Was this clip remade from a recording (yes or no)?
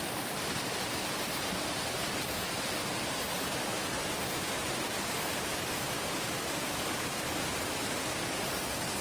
no